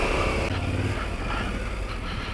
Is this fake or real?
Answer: real